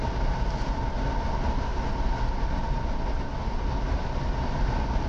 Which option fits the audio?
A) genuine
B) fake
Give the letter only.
A